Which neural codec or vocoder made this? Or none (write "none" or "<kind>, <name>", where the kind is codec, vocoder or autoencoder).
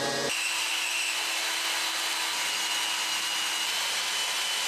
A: none